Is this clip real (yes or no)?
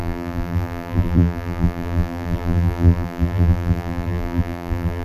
no